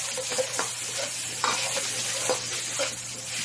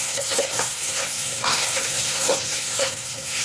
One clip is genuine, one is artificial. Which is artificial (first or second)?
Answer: second